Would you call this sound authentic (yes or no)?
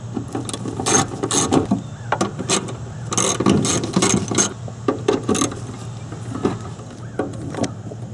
yes